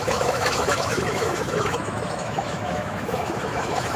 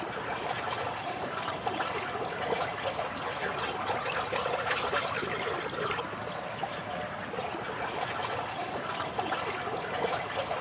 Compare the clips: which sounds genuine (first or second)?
second